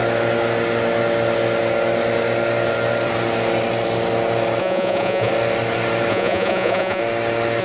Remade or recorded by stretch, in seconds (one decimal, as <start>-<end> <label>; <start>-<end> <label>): 0.0-4.6 recorded; 4.6-5.3 remade; 5.3-6.1 recorded; 6.1-7.0 remade; 7.0-7.6 recorded